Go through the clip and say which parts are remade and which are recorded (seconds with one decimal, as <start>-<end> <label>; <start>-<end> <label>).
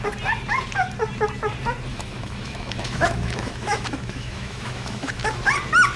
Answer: 0.0-1.9 recorded; 1.9-5.2 remade; 5.2-6.0 recorded